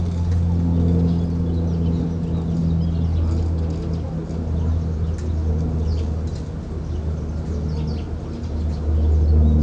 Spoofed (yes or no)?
no